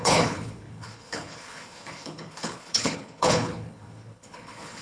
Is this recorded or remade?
remade